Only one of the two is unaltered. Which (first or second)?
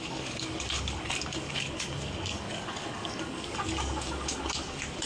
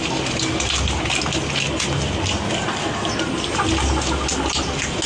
second